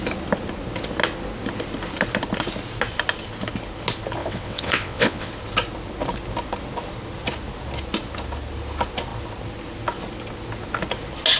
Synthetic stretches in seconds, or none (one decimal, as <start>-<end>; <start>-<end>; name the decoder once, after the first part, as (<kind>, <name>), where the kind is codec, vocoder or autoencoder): 4.2-5.3 (vocoder, WaveNeXt)